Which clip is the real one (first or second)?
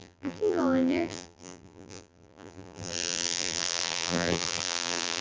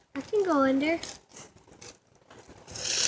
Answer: second